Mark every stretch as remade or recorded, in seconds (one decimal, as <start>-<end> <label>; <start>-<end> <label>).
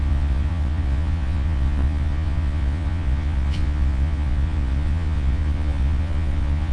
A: 0.0-6.7 remade